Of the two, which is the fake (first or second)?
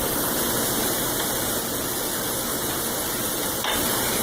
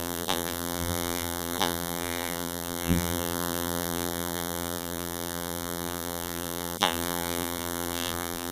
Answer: second